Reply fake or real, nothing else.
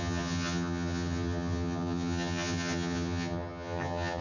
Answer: fake